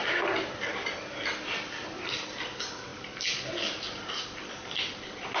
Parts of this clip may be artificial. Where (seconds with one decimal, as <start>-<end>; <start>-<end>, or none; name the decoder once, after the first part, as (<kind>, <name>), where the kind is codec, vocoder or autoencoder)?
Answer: none